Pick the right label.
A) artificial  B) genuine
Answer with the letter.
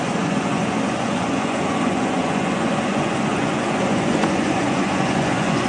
A